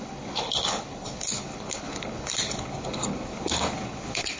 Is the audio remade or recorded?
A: remade